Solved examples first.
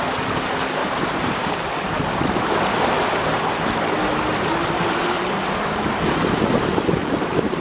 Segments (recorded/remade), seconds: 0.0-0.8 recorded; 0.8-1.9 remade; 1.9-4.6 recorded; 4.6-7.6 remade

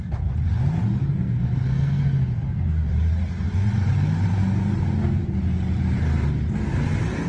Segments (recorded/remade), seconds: 0.0-1.1 recorded; 1.1-2.9 remade; 2.9-7.3 recorded

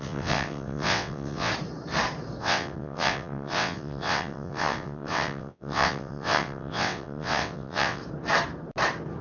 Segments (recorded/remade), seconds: 0.0-1.5 remade; 1.5-2.4 recorded; 2.4-8.0 remade; 8.0-9.2 recorded

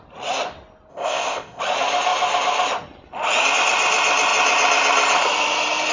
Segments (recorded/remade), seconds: 0.0-0.9 recorded; 0.9-1.6 remade; 1.6-5.9 recorded

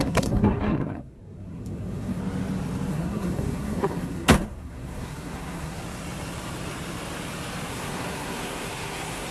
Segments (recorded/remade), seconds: 0.0-2.2 remade; 2.2-2.9 recorded; 2.9-5.8 remade; 5.8-7.7 recorded; 7.7-9.3 remade

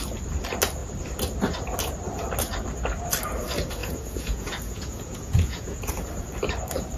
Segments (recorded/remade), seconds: 0.0-3.8 recorded; 3.8-5.9 remade; 5.9-7.0 recorded